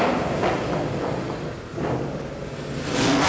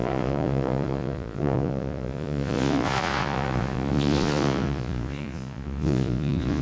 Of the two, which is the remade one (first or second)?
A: second